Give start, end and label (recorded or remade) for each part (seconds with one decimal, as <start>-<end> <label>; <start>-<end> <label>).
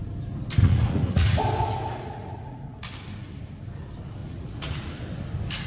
0.0-0.6 recorded; 0.6-1.4 remade; 1.4-1.9 recorded; 1.9-2.8 remade; 2.8-4.2 recorded; 4.2-4.9 remade; 4.9-5.7 recorded